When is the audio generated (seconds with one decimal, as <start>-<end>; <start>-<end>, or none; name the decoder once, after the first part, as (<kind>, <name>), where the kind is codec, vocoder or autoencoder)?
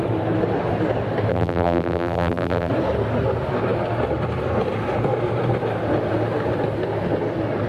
1.3-2.7 (vocoder, BigVGAN v2)